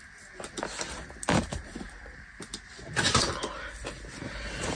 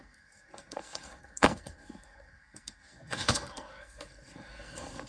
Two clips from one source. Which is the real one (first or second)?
first